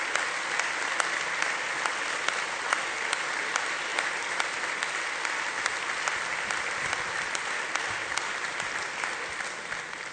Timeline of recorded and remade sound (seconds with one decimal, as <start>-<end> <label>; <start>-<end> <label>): 0.0-10.1 recorded